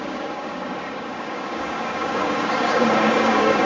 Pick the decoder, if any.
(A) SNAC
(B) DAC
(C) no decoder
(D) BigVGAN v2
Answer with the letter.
B